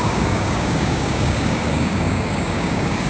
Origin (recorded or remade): remade